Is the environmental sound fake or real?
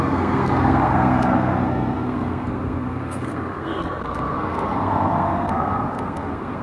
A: fake